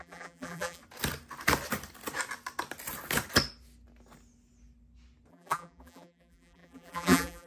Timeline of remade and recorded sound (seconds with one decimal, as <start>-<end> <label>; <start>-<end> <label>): 0.0-0.8 remade; 0.8-5.3 recorded; 5.3-7.5 remade